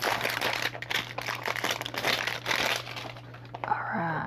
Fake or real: fake